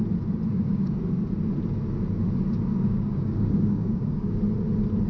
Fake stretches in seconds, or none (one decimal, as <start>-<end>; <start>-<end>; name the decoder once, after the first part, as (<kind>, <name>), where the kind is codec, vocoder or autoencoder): 0.5-1.0 (codec, DAC); 2.7-4.4